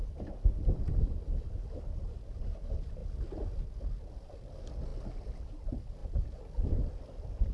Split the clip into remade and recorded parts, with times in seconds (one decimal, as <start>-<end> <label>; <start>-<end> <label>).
0.0-7.5 recorded

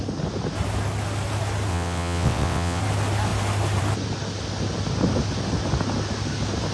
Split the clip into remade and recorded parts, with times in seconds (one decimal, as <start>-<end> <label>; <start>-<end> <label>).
0.0-1.7 recorded; 1.7-2.8 remade; 2.8-6.7 recorded

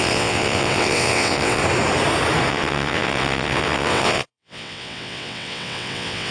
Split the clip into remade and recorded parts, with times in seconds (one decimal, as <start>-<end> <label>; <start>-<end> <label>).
0.0-1.6 remade; 1.6-2.5 recorded; 2.5-6.3 remade

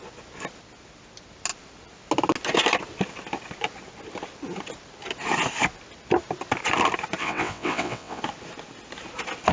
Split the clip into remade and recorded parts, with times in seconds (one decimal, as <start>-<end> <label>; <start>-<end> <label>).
0.0-7.2 recorded; 7.2-8.2 remade; 8.2-9.5 recorded

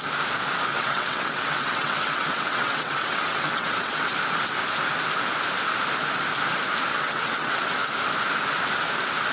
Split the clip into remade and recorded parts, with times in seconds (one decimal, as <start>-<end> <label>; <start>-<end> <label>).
0.0-0.7 recorded; 0.7-4.1 remade; 4.1-6.9 recorded; 6.9-7.8 remade; 7.8-9.3 recorded

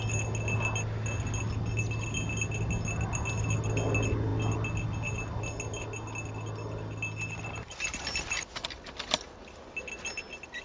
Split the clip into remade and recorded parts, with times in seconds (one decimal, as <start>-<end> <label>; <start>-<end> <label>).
0.0-10.6 recorded

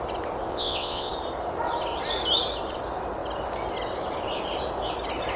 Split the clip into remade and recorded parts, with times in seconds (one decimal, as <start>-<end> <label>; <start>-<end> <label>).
0.0-0.5 recorded; 0.5-1.1 remade; 1.1-5.4 recorded